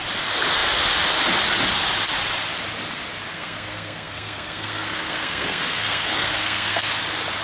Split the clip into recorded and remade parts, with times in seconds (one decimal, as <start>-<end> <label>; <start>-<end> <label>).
0.0-3.3 recorded; 3.3-7.0 remade; 7.0-7.4 recorded